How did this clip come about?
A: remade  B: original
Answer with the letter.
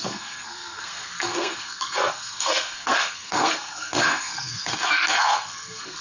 A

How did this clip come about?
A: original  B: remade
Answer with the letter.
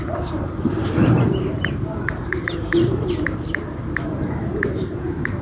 B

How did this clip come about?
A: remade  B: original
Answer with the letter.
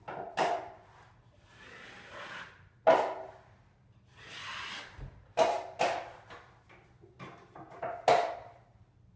B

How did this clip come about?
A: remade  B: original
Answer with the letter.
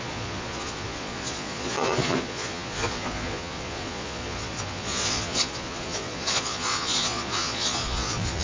A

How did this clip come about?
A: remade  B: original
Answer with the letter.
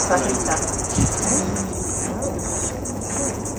A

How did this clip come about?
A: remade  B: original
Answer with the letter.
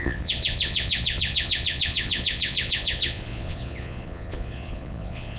A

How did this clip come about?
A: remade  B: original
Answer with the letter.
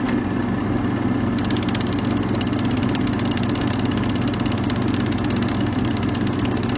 B